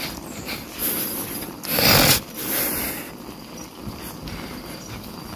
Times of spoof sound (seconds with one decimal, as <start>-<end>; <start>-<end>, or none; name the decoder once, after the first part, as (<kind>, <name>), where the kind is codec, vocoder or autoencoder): none